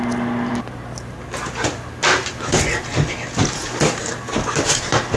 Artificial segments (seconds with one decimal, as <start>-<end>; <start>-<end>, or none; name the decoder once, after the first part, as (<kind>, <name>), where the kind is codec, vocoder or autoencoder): none